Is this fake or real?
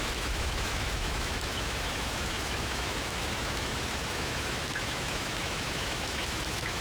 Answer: fake